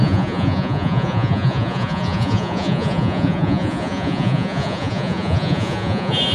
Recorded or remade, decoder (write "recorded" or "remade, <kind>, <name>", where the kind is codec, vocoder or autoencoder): remade, vocoder, Vocos